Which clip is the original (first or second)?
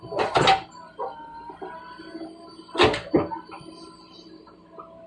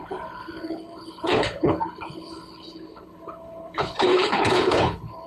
first